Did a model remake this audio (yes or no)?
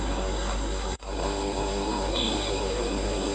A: yes